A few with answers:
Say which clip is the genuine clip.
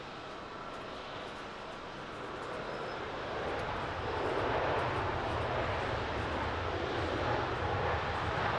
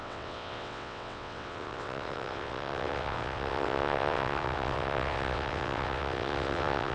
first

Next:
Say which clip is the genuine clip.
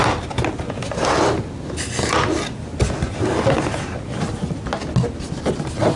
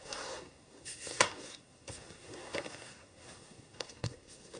first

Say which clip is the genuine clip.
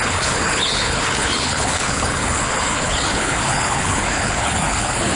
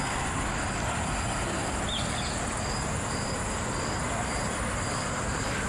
second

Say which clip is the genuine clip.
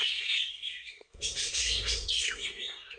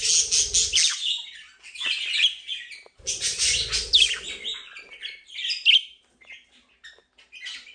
second